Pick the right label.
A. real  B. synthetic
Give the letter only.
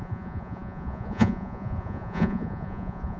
B